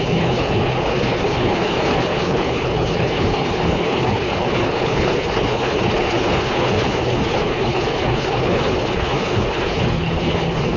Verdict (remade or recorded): remade